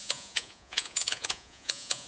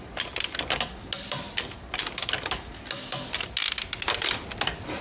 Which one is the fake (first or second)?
first